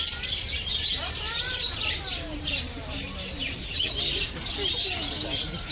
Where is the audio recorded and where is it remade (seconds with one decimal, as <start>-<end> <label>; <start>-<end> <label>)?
0.0-1.0 recorded; 1.0-4.4 remade; 4.4-5.7 recorded